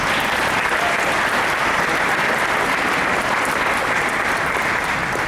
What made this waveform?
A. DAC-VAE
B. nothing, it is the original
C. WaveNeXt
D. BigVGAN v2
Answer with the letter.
B